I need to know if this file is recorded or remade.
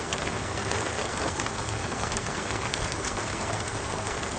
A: remade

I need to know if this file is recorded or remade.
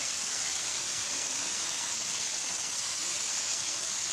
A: remade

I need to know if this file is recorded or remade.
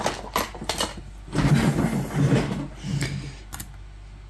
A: recorded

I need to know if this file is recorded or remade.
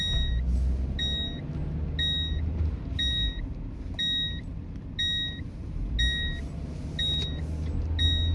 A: recorded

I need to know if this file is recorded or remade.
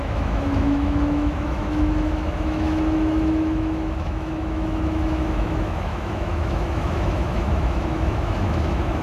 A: remade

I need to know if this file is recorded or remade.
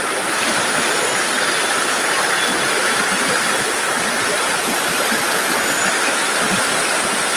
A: recorded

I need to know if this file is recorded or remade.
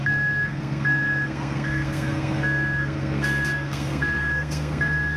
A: remade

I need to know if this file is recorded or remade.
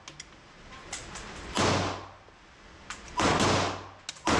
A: recorded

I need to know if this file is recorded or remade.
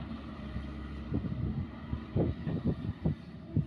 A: remade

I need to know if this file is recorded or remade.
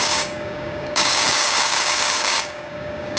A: remade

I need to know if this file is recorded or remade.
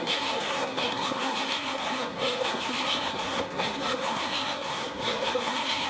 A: remade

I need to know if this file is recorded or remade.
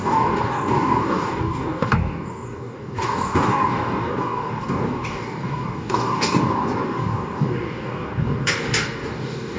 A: remade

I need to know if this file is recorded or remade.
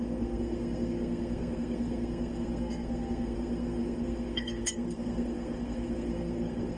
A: remade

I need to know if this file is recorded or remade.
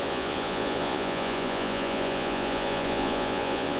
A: remade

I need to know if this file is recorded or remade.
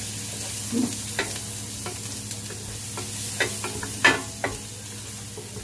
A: recorded